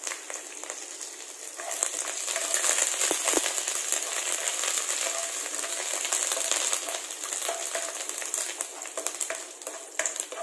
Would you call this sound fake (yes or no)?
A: no